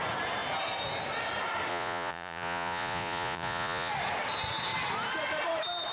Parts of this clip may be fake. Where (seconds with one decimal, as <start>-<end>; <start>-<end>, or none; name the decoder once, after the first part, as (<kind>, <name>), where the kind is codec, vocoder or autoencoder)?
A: 1.7-3.9 (vocoder, Vocos)